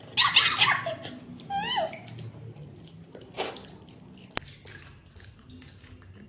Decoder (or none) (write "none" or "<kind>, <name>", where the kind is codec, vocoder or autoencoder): none